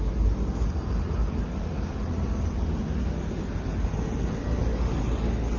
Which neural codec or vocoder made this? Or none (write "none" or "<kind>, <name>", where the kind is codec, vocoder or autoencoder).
none